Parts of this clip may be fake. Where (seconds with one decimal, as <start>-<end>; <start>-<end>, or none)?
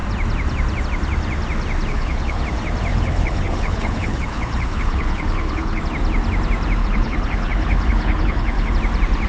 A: 1.9-2.4; 2.9-5.8; 6.8-8.7